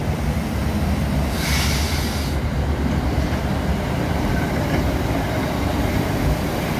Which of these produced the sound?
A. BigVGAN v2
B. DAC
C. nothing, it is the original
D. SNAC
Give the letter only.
C